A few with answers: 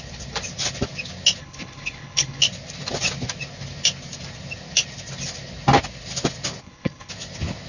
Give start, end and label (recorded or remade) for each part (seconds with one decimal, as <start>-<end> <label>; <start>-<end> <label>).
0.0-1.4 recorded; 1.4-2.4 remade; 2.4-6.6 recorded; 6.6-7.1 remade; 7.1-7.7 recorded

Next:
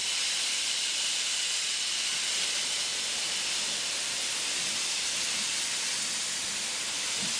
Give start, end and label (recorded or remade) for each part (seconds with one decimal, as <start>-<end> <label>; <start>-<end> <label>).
0.0-1.0 remade; 1.0-2.9 recorded; 2.9-7.0 remade; 7.0-7.4 recorded

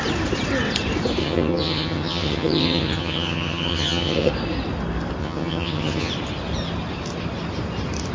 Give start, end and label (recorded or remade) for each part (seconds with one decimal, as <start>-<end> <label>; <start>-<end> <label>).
0.0-1.2 recorded; 1.2-4.3 remade; 4.3-5.2 recorded; 5.2-6.1 remade; 6.1-8.1 recorded